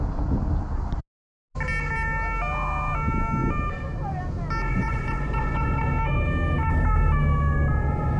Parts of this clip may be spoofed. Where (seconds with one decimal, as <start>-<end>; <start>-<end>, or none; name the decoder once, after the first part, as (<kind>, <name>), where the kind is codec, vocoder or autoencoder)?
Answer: 4.7-5.9 (vocoder, Vocos)